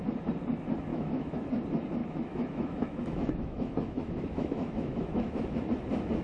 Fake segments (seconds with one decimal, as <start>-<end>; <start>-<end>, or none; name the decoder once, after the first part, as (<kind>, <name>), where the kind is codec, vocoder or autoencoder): 0.9-1.5 (autoencoder, DAC-VAE); 2.0-5.6